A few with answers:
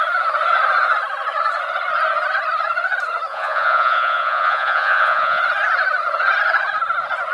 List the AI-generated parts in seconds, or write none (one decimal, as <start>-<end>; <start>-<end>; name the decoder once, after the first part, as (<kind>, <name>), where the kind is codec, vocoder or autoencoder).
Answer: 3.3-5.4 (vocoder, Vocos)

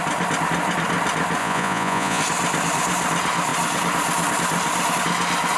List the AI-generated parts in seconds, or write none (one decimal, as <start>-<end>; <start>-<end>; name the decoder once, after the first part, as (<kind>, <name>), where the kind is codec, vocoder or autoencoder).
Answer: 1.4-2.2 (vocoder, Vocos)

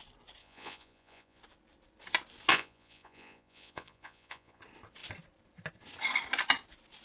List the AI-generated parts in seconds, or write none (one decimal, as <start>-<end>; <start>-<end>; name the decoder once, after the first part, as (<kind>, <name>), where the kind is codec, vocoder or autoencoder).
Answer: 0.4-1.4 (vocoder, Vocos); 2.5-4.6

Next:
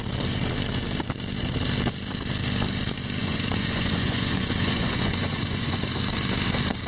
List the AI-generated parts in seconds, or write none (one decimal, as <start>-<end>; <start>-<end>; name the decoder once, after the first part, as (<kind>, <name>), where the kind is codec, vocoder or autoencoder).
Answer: 3.2-5.8 (vocoder, Vocos)